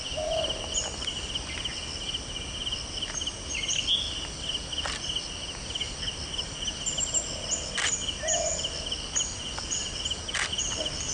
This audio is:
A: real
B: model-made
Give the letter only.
A